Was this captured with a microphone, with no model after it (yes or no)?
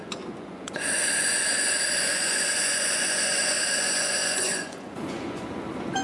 no